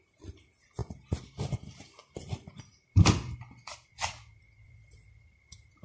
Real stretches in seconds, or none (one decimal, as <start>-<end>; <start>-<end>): 0.0-0.8; 1.3-2.0